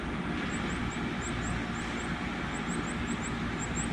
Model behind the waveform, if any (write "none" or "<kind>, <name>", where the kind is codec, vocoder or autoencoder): none